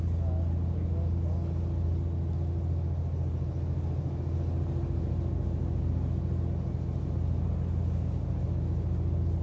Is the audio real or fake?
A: real